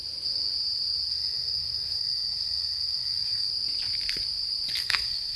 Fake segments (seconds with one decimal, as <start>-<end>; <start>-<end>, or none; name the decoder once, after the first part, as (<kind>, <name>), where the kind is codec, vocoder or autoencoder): 1.1-3.5 (codec, SNAC); 4.8-5.4